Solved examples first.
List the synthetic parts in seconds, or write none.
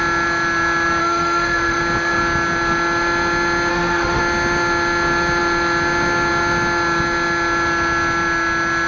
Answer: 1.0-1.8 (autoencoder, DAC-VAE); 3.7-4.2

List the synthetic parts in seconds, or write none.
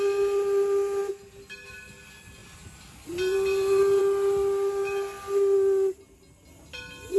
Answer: none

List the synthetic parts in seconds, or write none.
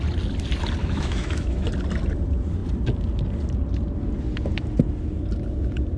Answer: 0.8-1.7 (autoencoder, DAC-VAE)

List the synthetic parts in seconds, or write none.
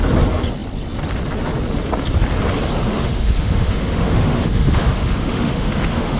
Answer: 2.9-6.2 (autoencoder, DAC-VAE)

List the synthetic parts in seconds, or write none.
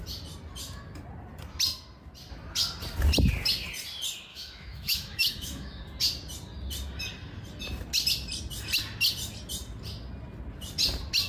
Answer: 4.3-5.8 (autoencoder, DAC-VAE)